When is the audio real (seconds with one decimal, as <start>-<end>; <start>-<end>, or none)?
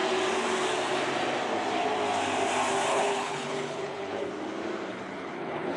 0.0-2.9; 4.3-4.9